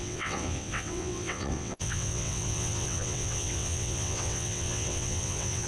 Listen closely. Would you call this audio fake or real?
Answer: fake